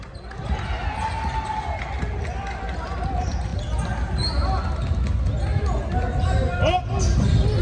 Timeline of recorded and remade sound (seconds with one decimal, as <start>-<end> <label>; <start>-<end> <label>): 0.0-7.6 recorded